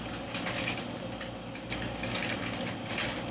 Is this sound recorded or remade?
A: recorded